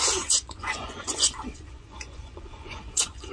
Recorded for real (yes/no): no